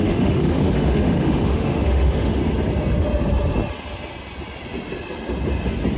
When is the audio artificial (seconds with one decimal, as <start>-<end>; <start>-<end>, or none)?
0.0-2.4